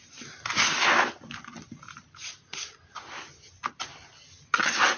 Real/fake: real